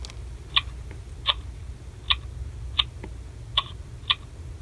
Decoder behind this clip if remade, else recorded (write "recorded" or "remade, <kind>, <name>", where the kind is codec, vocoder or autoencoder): recorded